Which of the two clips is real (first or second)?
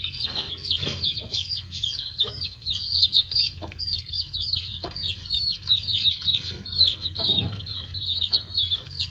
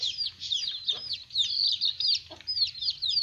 second